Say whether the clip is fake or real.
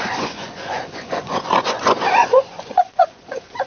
fake